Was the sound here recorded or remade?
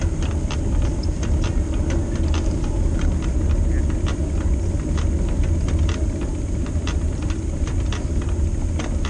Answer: recorded